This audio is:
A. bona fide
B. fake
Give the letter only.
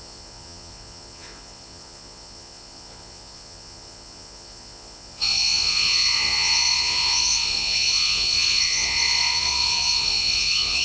B